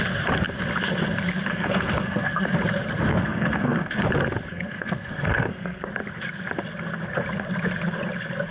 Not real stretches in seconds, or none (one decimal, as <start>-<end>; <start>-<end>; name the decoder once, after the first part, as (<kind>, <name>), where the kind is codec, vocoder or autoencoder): 1.5-2.5 (codec, SNAC); 3.1-3.9; 4.5-5.9